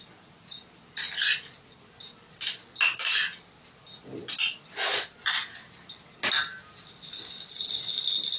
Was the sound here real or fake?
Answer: real